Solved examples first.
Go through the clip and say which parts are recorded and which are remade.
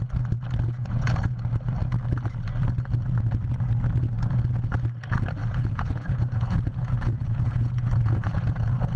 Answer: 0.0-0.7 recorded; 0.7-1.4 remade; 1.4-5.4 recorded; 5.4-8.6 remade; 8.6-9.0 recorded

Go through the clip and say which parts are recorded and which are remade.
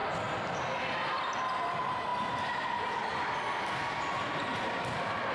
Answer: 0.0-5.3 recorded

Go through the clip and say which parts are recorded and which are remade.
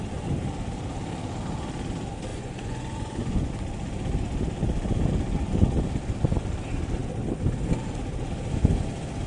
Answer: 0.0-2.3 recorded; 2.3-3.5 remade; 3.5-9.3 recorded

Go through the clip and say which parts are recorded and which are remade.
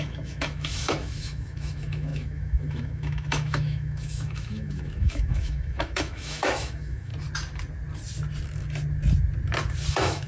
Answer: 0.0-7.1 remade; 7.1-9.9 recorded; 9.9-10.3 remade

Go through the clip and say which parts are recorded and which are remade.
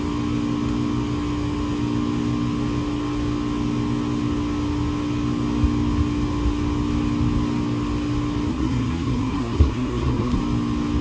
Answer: 0.0-8.5 recorded; 8.5-10.4 remade; 10.4-11.0 recorded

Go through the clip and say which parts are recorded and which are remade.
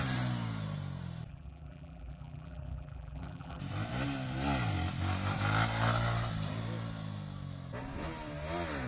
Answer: 0.0-1.3 recorded; 1.3-3.6 remade; 3.6-8.9 recorded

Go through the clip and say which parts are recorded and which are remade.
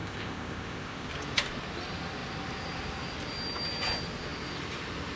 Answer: 0.0-1.1 remade; 1.1-5.2 recorded